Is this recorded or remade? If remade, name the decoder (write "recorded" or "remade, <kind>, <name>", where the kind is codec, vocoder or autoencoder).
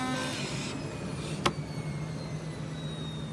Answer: recorded